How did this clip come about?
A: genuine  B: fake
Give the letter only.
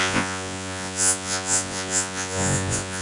B